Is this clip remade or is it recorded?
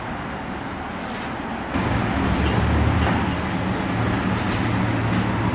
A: recorded